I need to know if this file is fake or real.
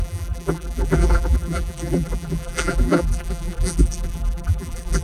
fake